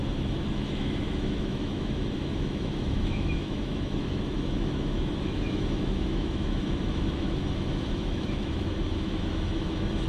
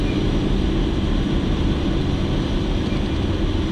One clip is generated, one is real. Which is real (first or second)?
second